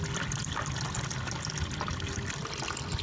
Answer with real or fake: real